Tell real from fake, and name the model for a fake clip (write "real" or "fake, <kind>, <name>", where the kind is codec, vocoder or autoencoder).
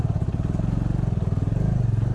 real